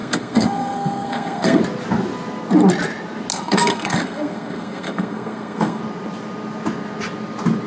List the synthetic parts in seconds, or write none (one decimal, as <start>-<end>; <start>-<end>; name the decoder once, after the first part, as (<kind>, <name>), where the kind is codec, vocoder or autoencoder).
0.0-1.6 (codec, SNAC); 3.3-5.8